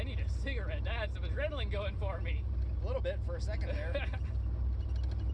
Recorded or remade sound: recorded